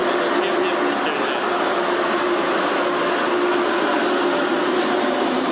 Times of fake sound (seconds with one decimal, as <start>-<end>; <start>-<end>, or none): none